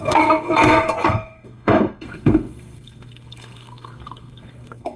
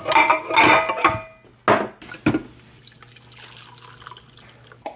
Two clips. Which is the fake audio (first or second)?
first